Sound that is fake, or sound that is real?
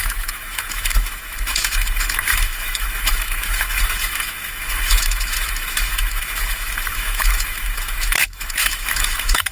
fake